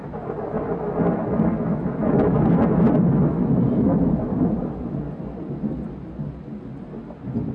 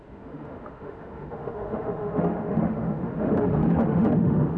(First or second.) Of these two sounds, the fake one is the second